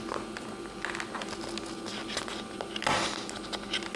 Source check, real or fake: real